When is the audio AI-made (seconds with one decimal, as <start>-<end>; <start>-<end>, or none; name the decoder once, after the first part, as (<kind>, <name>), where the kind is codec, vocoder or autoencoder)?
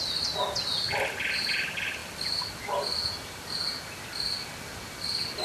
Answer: none